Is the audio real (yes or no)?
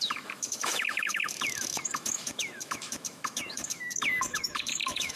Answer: no